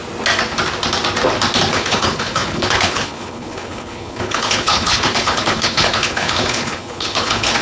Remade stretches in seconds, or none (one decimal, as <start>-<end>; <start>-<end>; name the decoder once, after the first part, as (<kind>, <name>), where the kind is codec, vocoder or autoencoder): 1.7-7.6 (codec, HILCodec)